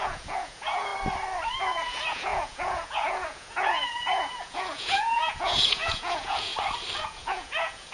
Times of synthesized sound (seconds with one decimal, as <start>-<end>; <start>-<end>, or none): 0.0-0.9; 1.6-6.5; 7.0-7.9

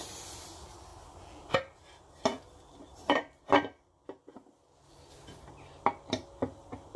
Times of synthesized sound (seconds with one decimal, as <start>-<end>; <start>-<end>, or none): none

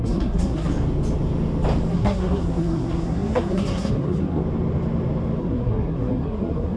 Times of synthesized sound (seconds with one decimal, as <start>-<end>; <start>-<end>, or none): 0.0-0.7; 1.9-4.4; 5.4-6.8

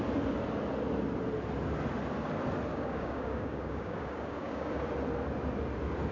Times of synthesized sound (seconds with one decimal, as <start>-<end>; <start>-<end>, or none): 2.7-4.7

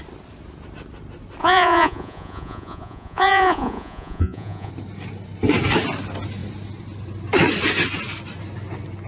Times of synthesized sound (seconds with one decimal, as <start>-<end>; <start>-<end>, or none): 1.4-4.7